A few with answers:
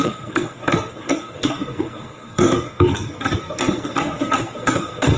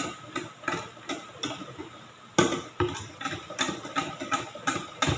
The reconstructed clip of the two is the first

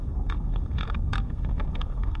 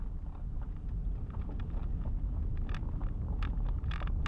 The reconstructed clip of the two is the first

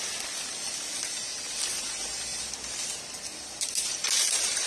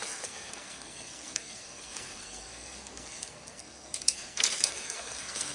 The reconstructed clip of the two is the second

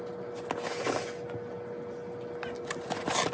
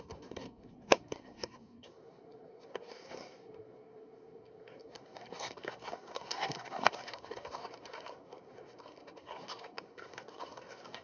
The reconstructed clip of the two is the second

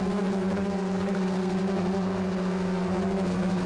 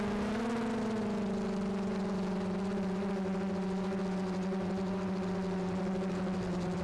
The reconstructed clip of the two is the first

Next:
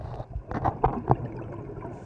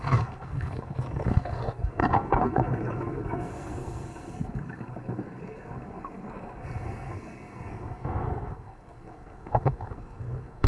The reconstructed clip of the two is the second